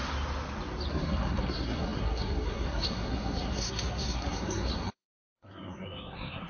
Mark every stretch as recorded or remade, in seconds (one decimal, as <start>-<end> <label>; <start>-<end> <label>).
0.0-0.9 recorded; 0.9-6.5 remade